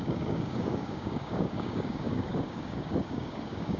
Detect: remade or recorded remade